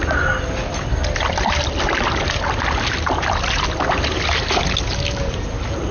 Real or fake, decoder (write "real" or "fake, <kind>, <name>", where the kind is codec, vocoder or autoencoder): real